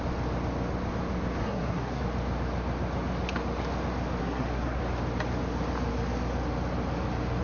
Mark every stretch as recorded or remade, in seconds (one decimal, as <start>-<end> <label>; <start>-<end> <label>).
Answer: 0.0-1.4 recorded; 1.4-2.0 remade; 2.0-4.2 recorded; 4.2-4.8 remade; 4.8-7.4 recorded